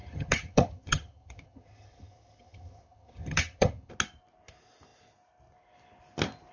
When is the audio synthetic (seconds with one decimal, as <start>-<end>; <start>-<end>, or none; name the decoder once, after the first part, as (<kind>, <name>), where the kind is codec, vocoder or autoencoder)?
0.0-3.9 (vocoder, HiFi-GAN)